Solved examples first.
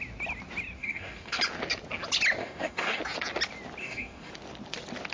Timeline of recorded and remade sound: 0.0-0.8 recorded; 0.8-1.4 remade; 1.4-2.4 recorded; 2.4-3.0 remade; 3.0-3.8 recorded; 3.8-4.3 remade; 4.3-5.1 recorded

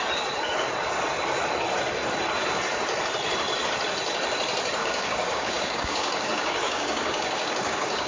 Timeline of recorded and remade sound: 0.0-4.8 recorded; 4.8-8.1 remade

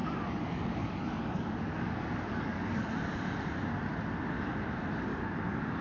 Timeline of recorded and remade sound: 0.0-2.9 remade; 2.9-5.1 recorded; 5.1-5.8 remade